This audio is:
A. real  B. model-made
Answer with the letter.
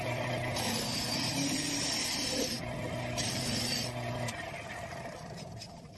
A